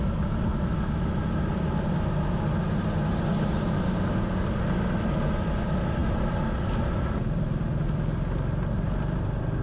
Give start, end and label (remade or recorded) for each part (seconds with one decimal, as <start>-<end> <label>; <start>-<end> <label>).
0.0-9.6 recorded